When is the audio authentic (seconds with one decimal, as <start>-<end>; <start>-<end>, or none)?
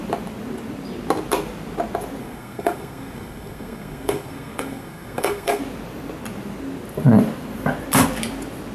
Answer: 0.0-2.2; 5.6-8.7